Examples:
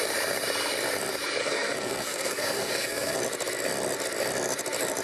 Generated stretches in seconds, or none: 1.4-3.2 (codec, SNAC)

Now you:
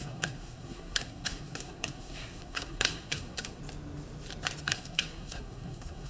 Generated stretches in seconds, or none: 0.0-3.6 (codec, SNAC); 4.6-6.1

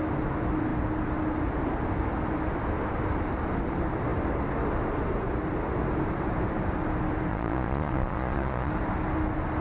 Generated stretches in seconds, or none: 7.3-8.7 (vocoder, Vocos)

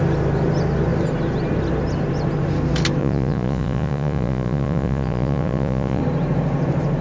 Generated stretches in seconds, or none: 3.0-6.0 (vocoder, Vocos)

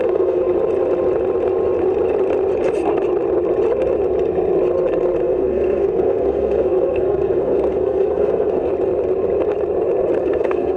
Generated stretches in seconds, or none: 0.0-0.4 (codec, SNAC); 5.2-8.7; 10.2-10.8